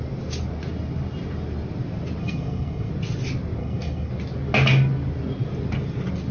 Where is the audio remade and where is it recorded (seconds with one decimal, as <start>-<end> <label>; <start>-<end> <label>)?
0.0-2.2 recorded; 2.2-2.9 remade; 2.9-3.6 recorded; 3.6-4.1 remade; 4.1-6.3 recorded